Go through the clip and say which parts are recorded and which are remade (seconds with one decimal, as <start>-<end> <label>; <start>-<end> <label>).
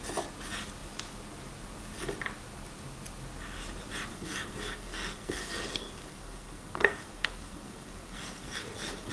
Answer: 0.0-4.1 recorded; 4.1-9.1 remade